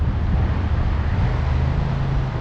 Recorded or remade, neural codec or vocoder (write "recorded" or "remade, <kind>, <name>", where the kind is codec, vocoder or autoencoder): recorded